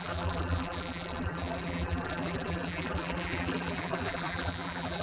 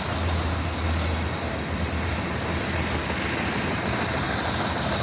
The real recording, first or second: second